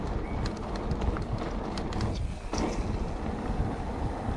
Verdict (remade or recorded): recorded